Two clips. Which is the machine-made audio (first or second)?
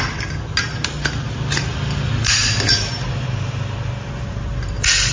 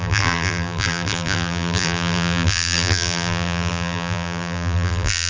second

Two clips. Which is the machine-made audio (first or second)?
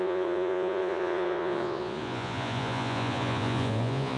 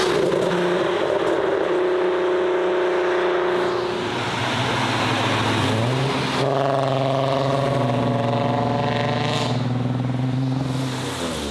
first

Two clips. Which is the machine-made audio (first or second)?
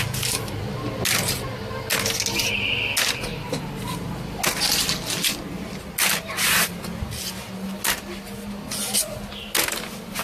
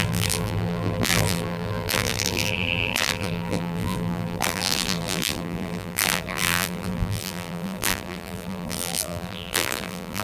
second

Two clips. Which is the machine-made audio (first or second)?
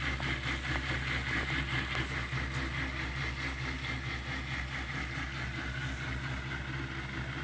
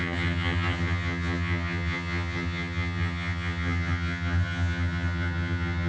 second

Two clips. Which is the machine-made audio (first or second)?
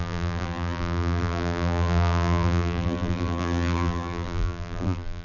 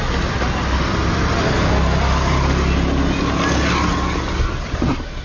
first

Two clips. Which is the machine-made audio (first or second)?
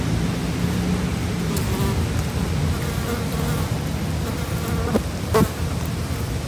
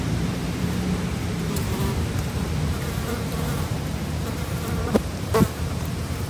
second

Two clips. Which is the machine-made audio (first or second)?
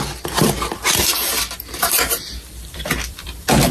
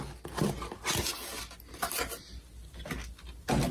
first